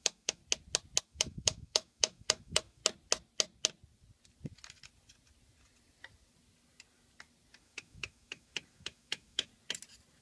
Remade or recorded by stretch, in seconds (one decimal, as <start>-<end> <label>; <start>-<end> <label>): 0.0-0.4 remade; 0.4-1.0 recorded; 1.0-2.8 remade; 2.8-7.6 recorded; 7.6-9.5 remade; 9.5-10.2 recorded